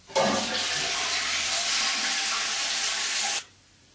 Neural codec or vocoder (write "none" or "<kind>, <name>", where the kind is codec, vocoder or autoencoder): none